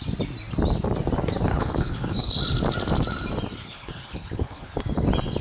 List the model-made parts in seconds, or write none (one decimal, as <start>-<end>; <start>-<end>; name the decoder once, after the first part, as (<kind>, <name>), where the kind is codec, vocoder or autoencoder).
1.5-2.3 (codec, HILCodec); 3.6-4.7

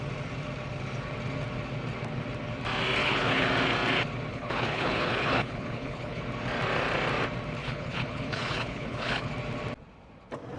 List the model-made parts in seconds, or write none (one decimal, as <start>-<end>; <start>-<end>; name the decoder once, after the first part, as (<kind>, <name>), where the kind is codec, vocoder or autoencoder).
3.0-3.5 (codec, HILCodec); 4.3-6.2; 7.6-9.3

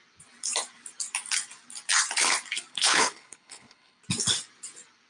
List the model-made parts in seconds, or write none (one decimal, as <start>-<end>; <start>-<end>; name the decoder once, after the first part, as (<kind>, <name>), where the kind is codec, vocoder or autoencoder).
2.7-4.0 (codec, HILCodec)

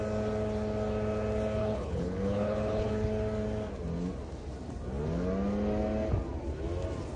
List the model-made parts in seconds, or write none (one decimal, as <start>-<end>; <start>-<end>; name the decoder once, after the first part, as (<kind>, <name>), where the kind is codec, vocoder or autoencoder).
1.6-2.9 (codec, HILCodec)

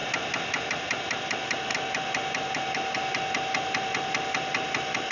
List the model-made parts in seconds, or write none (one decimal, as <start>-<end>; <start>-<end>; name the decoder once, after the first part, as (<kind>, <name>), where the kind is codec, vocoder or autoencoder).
none

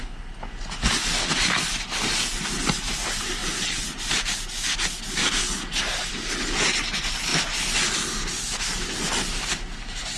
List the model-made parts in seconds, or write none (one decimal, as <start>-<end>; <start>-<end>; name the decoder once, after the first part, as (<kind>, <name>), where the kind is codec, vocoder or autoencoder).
none